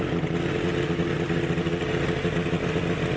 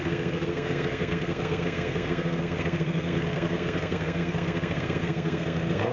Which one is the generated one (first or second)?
second